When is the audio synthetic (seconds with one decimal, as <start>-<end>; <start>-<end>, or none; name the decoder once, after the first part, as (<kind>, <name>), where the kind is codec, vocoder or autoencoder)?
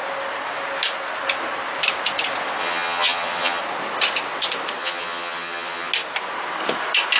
2.6-3.6 (vocoder, HiFi-GAN); 4.8-5.9